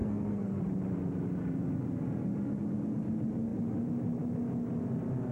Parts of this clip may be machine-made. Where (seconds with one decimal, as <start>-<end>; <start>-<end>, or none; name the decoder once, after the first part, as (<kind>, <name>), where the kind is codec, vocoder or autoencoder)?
0.0-0.6 (codec, SNAC)